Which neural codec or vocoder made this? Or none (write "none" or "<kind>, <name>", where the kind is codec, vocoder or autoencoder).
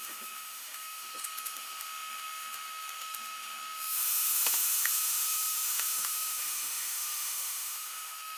autoencoder, DAC-VAE